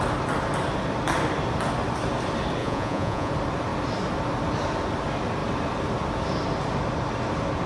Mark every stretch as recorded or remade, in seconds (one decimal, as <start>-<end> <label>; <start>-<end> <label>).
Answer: 0.0-2.6 recorded; 2.6-3.3 remade; 3.3-7.7 recorded